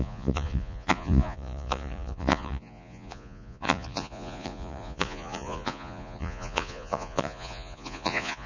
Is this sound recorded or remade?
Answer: remade